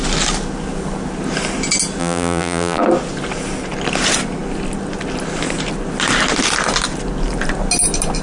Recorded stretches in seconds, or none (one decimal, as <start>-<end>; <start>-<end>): 0.0-2.0; 2.8-8.2